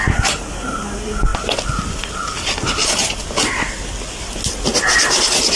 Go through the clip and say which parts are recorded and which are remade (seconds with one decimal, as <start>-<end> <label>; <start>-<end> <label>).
0.0-5.6 recorded